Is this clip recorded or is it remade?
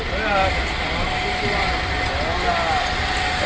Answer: recorded